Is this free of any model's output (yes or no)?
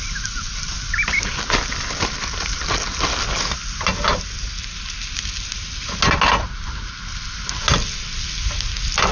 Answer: yes